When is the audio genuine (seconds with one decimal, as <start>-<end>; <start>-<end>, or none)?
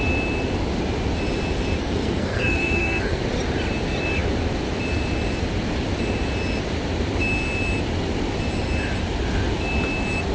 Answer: 0.0-1.8; 3.2-10.3